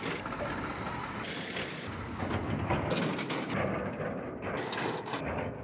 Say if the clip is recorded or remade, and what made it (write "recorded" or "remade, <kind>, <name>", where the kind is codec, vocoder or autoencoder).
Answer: recorded